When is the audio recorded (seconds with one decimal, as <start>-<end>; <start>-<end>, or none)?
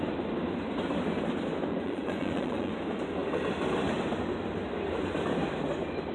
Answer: 0.0-1.7; 2.7-6.1